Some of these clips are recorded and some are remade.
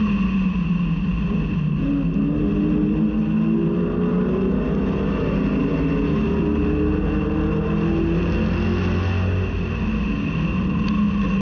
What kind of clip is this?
recorded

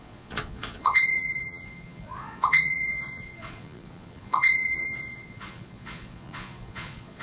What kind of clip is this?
remade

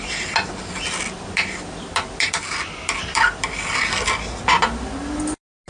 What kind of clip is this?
recorded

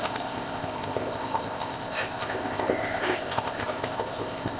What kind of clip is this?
remade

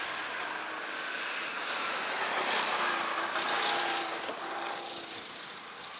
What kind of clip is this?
recorded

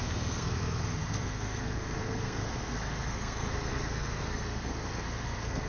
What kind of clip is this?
remade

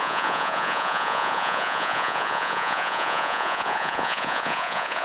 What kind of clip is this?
remade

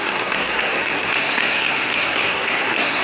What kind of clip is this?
remade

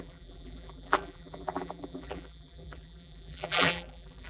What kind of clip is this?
remade